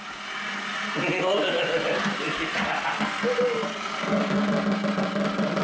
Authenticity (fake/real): real